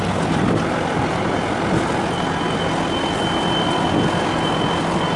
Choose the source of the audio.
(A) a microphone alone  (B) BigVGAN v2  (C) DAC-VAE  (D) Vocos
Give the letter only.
A